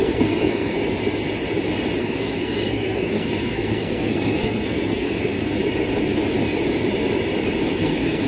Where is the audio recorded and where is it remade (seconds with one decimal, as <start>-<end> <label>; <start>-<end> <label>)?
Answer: 0.0-0.8 remade; 0.8-2.0 recorded; 2.0-5.6 remade; 5.6-7.7 recorded; 7.7-8.3 remade